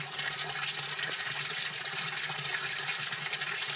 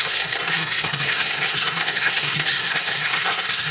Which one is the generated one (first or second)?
second